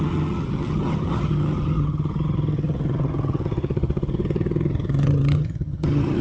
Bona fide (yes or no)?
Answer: no